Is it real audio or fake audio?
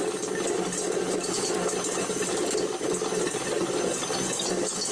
real